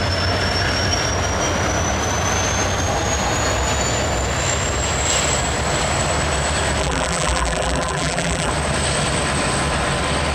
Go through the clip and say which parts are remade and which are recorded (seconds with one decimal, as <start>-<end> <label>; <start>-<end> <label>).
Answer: 0.0-6.8 recorded; 6.8-8.5 remade; 8.5-10.3 recorded